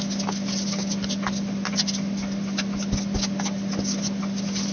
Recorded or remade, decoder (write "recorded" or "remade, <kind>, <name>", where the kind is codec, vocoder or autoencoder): recorded